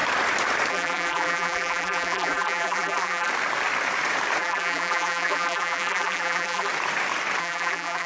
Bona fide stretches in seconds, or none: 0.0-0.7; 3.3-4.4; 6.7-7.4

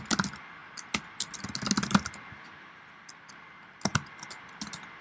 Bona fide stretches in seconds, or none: 0.0-5.0

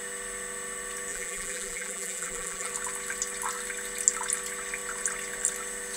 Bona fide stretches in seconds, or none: 0.0-1.1; 2.7-6.0